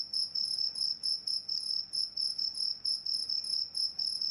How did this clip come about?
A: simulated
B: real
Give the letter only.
B